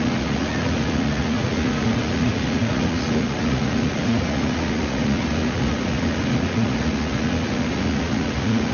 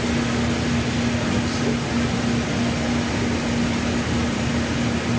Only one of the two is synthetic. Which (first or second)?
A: first